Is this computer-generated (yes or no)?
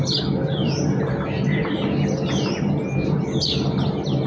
no